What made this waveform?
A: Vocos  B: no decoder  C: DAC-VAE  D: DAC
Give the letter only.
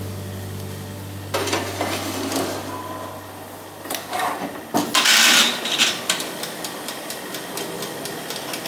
B